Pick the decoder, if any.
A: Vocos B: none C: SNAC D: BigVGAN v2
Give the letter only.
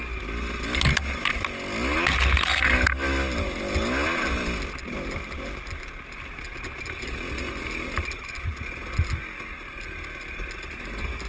B